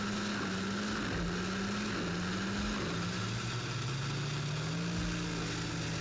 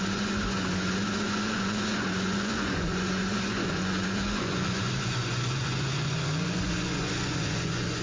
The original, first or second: first